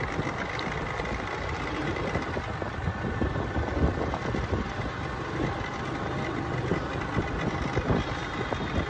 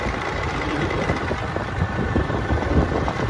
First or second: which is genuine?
first